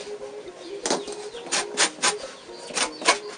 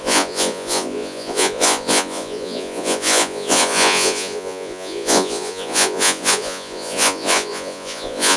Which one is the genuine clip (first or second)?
first